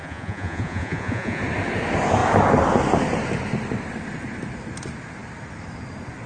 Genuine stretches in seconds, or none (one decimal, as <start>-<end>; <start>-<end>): 1.4-6.3